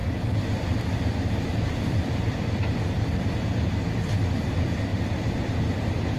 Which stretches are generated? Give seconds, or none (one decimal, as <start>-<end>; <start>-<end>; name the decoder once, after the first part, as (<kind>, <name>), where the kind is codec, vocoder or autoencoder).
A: 0.0-6.2 (vocoder, BigVGAN v2)